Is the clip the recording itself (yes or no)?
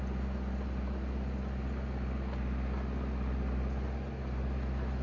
yes